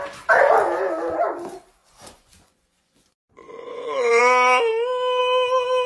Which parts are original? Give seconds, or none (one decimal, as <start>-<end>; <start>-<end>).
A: 0.0-1.8; 4.2-5.9